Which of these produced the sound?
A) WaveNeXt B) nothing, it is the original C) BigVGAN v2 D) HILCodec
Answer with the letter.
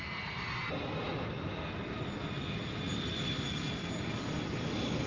B